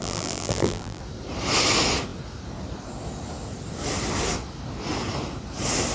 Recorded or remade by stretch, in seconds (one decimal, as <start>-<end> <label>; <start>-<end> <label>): 0.0-1.0 remade; 1.0-5.9 recorded